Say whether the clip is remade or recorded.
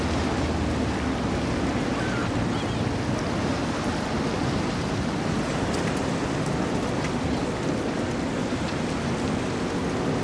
recorded